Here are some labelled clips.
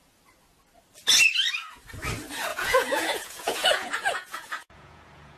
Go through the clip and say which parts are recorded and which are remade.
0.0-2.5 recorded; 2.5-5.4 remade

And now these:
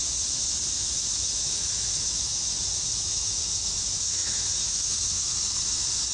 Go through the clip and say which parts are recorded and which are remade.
0.0-0.4 remade; 0.4-0.9 recorded; 0.9-6.1 remade

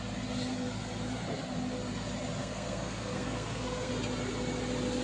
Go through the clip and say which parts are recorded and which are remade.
0.0-2.4 recorded; 2.4-3.9 remade; 3.9-5.0 recorded

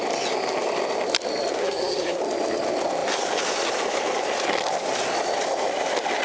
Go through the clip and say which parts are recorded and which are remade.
0.0-1.6 recorded; 1.6-2.2 remade; 2.2-6.2 recorded

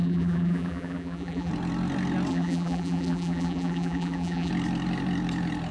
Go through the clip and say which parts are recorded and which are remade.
0.0-1.5 remade; 1.5-2.3 recorded; 2.3-4.5 remade; 4.5-5.7 recorded

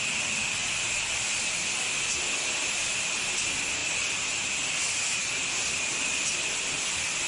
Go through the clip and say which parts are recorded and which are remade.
0.0-0.6 remade; 0.6-2.2 recorded; 2.2-7.3 remade

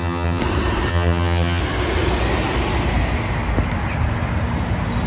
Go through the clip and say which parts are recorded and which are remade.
0.0-0.4 remade; 0.4-0.9 recorded; 0.9-1.6 remade; 1.6-5.1 recorded

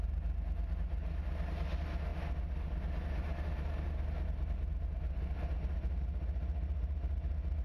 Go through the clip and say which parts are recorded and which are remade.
0.0-7.6 recorded